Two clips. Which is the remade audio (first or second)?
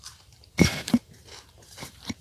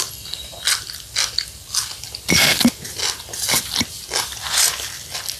first